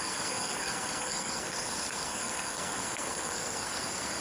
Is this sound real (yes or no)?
no